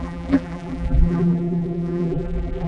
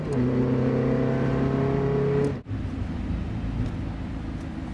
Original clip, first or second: second